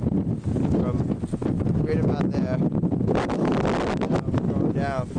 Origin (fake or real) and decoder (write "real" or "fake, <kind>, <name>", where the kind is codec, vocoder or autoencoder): real